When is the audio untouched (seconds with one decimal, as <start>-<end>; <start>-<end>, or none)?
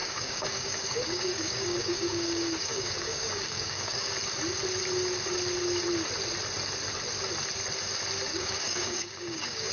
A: 4.1-8.3